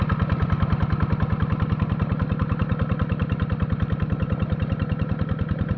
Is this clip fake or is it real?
real